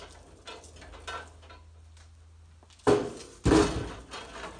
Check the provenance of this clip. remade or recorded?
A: recorded